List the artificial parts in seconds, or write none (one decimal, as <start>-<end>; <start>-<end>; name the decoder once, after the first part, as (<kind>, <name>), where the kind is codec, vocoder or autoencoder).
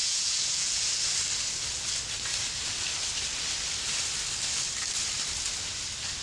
0.0-0.9 (vocoder, Vocos)